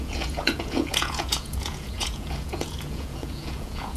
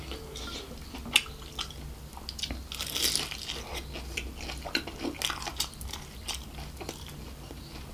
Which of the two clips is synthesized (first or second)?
first